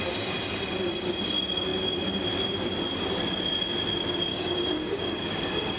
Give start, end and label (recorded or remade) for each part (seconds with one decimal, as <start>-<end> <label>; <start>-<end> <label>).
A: 0.0-4.3 recorded; 4.3-5.8 remade